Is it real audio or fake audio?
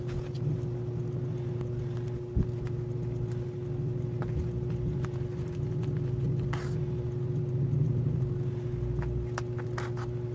real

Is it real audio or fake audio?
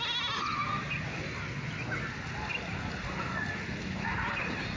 real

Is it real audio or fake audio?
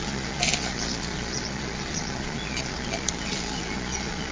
fake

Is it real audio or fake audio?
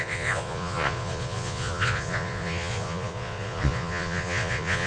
fake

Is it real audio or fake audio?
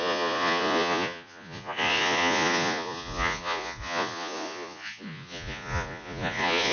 fake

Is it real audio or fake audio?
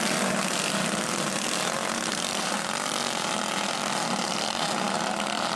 real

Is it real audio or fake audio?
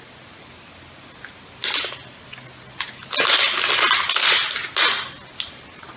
real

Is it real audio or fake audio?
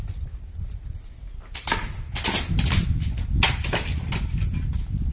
real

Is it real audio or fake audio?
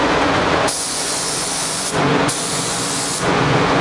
fake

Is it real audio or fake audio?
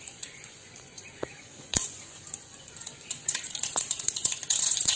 fake